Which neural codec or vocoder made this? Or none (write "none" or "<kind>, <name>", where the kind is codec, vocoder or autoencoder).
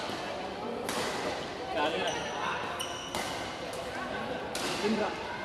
none